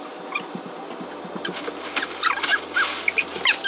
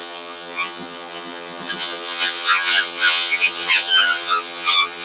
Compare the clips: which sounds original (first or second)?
first